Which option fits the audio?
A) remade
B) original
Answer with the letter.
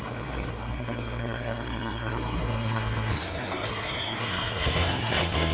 A